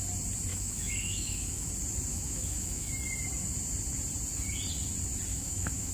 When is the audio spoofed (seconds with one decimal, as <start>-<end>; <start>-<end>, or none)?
0.5-1.7; 2.1-2.9; 5.3-5.9